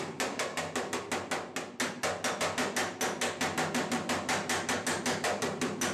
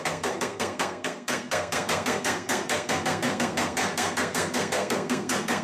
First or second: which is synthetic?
second